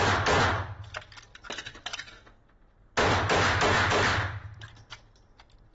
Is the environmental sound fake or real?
real